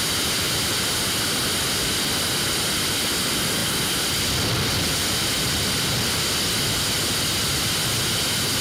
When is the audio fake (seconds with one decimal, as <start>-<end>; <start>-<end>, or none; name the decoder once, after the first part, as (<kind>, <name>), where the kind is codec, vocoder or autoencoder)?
none